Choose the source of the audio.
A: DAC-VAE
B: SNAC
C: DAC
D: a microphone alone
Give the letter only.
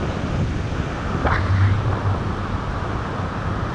D